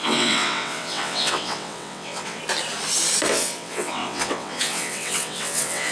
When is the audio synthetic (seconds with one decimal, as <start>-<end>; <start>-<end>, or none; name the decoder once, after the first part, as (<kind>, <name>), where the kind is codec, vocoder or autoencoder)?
0.0-2.4 (vocoder, WaveNeXt); 3.3-5.9